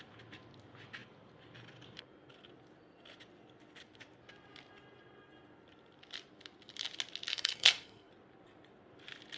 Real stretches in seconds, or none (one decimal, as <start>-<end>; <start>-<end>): 0.0-7.3; 8.1-9.4